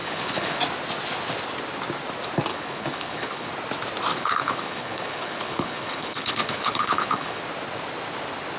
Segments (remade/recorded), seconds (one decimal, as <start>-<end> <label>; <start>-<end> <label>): 0.0-0.6 remade; 0.6-2.5 recorded; 2.5-3.5 remade; 3.5-4.1 recorded; 4.1-7.4 remade; 7.4-8.6 recorded